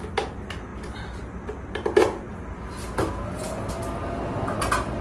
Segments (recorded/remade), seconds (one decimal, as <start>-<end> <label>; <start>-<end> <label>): 0.0-5.0 recorded